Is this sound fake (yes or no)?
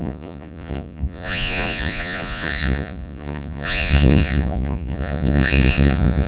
yes